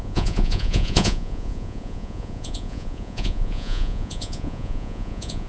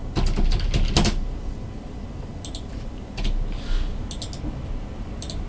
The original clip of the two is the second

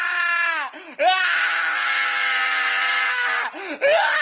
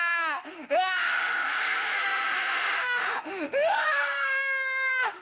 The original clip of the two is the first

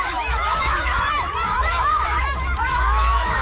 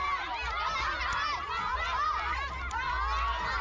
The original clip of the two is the second